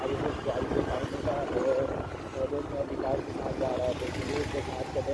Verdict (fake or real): real